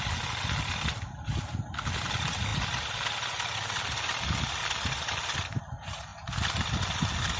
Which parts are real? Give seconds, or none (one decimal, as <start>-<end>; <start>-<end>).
0.0-7.4